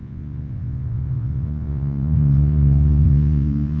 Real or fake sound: fake